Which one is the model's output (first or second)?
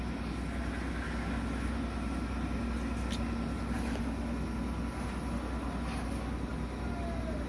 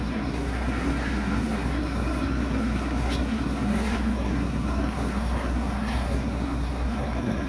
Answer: second